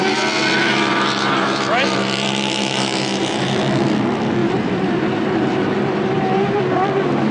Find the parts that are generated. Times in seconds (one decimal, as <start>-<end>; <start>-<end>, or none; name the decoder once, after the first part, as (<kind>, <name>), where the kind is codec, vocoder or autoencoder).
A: 0.7-3.6 (vocoder, BigVGAN v2); 4.4-6.6

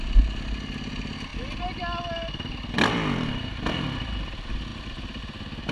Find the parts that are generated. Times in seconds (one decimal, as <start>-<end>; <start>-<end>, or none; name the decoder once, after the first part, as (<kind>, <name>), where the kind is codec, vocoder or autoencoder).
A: none

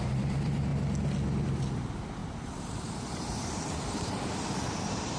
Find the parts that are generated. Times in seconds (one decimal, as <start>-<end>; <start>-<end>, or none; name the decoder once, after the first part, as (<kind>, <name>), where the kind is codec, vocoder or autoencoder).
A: 0.0-0.7 (vocoder, BigVGAN v2); 1.4-5.2

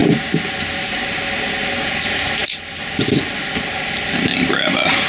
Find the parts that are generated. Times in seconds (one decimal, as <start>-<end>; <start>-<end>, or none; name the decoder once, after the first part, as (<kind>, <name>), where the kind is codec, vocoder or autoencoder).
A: none

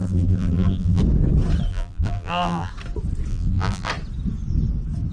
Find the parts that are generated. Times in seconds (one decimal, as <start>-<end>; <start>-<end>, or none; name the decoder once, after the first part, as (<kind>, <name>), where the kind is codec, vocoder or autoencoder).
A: 0.0-1.0 (vocoder, BigVGAN v2); 1.7-2.7; 3.3-3.9